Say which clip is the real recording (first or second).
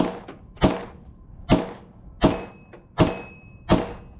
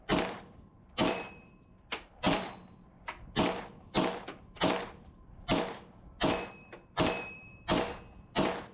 first